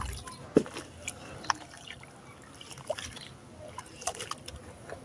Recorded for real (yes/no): yes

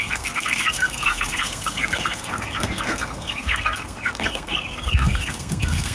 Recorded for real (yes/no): no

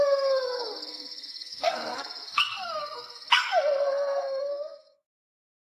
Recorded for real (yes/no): no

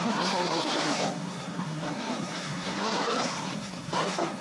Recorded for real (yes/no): no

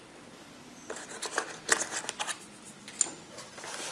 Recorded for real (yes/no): yes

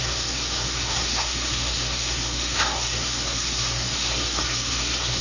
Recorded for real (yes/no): no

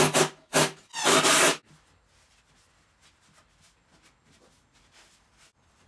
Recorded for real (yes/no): yes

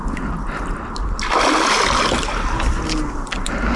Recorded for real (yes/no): yes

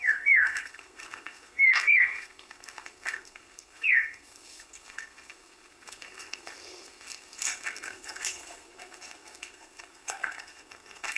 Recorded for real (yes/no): no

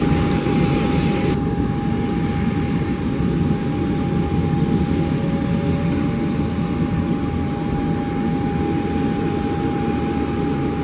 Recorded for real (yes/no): yes